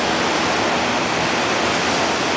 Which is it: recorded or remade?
recorded